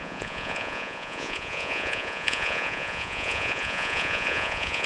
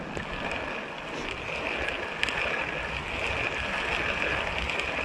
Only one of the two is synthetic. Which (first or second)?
first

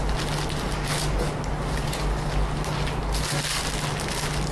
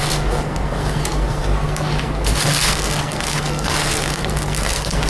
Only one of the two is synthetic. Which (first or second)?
second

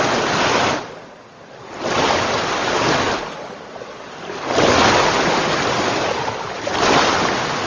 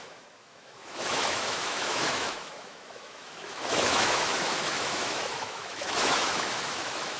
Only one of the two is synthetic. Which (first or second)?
second